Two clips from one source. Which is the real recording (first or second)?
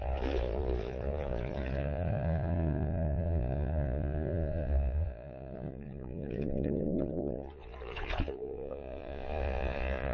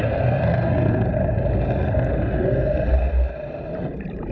second